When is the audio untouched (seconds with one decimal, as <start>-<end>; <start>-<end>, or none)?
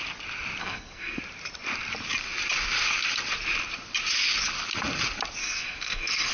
0.0-0.6; 1.2-5.4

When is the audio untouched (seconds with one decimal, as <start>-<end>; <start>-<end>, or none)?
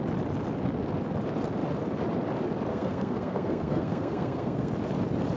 0.0-2.7; 4.7-5.4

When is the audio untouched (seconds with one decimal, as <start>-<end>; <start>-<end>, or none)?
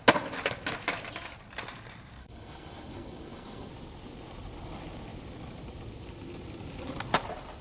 0.0-2.2; 3.7-7.6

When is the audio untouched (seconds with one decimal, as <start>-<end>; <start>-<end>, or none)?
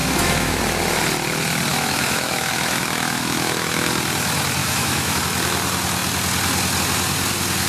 0.6-1.7; 3.9-4.6; 5.2-7.7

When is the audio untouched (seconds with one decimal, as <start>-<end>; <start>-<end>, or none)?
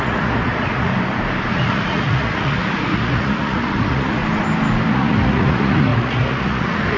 0.9-1.5; 4.2-4.9